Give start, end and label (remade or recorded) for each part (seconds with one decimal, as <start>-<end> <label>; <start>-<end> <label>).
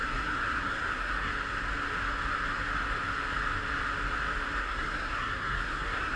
0.0-1.3 remade; 1.3-4.6 recorded; 4.6-6.2 remade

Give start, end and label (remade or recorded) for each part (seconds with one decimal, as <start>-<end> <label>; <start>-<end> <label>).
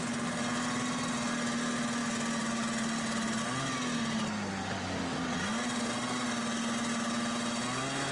0.0-8.1 recorded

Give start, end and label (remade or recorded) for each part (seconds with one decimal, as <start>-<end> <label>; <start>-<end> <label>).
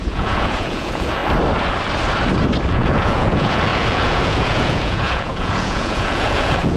0.0-1.2 remade; 1.2-2.7 recorded; 2.7-6.8 remade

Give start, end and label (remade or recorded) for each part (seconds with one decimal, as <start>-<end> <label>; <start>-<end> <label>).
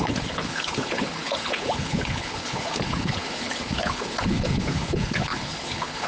0.0-6.1 remade